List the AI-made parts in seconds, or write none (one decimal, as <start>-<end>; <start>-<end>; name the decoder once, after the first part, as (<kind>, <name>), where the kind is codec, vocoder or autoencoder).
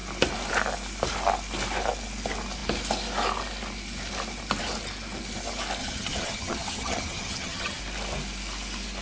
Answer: 5.8-7.8 (vocoder, HiFi-GAN)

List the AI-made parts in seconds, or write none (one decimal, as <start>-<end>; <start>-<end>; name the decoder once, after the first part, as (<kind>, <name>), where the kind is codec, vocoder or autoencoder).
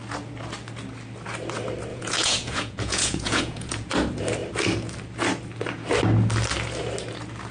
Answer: 1.9-3.9 (vocoder, Vocos)